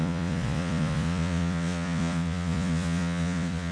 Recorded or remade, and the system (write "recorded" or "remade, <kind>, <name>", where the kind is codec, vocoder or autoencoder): remade, vocoder, Vocos